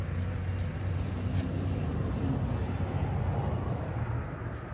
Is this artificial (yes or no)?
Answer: no